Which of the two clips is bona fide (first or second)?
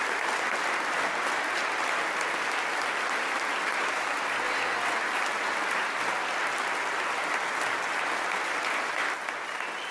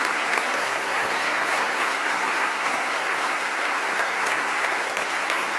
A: first